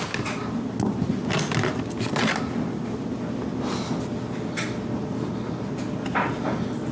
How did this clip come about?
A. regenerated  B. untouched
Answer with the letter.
B